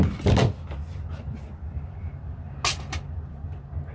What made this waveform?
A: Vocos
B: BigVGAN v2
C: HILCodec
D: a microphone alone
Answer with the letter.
D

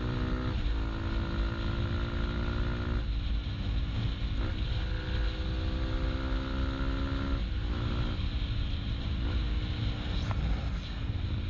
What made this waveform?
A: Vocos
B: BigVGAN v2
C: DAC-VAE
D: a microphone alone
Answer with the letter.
D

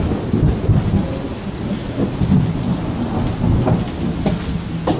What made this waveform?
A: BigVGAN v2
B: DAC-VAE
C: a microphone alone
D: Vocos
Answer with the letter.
C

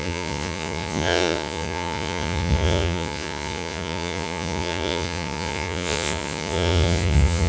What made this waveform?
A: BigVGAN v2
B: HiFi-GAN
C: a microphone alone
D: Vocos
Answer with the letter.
D